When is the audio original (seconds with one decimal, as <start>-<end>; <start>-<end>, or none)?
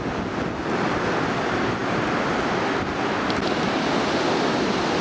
0.0-5.0